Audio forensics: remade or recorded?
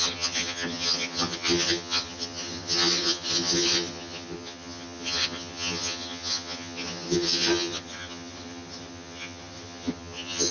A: remade